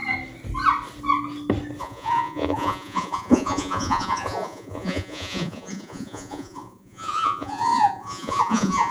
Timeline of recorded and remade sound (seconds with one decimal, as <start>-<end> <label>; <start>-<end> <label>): 0.0-1.8 recorded; 1.8-8.9 remade